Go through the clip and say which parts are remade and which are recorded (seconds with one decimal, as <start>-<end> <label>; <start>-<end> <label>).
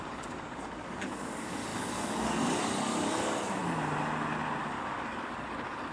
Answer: 0.0-3.6 remade; 3.6-4.6 recorded; 4.6-5.9 remade